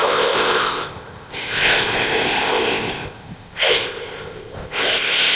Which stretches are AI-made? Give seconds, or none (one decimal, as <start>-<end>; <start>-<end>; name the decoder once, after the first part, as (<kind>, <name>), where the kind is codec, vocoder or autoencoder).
0.0-5.4 (codec, ZipCodec)

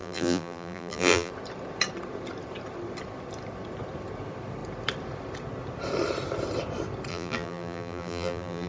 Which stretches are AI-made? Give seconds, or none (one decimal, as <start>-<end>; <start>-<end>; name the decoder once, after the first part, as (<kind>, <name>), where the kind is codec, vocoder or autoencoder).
0.0-1.3 (vocoder, BigVGAN v2); 7.1-8.7

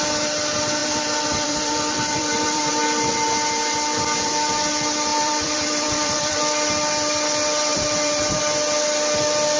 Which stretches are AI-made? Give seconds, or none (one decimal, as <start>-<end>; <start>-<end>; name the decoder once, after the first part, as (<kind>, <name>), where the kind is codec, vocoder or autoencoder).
0.8-2.7 (vocoder, BigVGAN v2); 5.1-6.4; 7.7-8.4

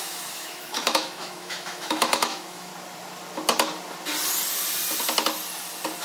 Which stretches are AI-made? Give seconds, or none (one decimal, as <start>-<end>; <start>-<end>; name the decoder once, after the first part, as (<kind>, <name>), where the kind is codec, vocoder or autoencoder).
0.0-2.7 (autoencoder, DAC-VAE)

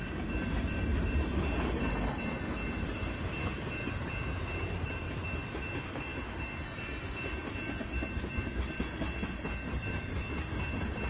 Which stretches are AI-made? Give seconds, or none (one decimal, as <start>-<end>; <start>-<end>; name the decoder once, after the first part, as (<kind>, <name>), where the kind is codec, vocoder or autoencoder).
none

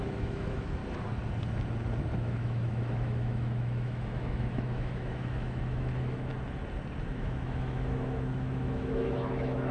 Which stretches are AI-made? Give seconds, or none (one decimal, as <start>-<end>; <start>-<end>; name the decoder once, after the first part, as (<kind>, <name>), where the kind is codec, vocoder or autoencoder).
0.0-0.8 (autoencoder, DAC-VAE); 2.1-6.3; 7.0-9.7

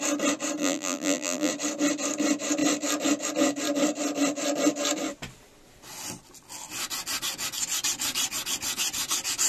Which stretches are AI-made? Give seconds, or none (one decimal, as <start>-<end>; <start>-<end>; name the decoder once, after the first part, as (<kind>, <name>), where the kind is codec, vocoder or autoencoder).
0.6-1.5 (vocoder, BigVGAN v2)

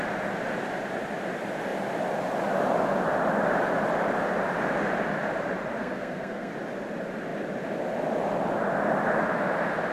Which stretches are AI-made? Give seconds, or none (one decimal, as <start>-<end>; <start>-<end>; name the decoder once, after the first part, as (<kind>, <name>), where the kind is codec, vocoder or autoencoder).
5.8-6.5 (codec, SNAC)